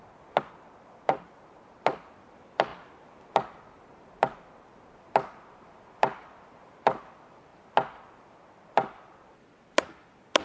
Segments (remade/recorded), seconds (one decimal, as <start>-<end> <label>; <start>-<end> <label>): 0.0-10.4 recorded